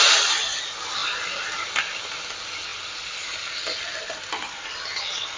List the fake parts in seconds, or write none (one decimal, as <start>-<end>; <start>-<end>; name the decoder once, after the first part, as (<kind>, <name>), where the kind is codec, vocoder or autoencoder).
none